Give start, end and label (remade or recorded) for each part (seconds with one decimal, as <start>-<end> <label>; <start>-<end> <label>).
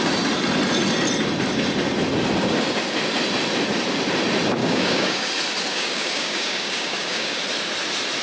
0.0-4.6 recorded; 4.6-5.3 remade; 5.3-5.7 recorded; 5.7-7.4 remade; 7.4-8.2 recorded